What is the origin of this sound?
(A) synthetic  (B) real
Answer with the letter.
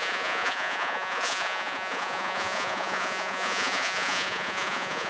A